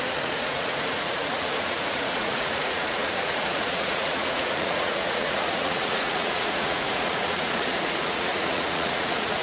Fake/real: fake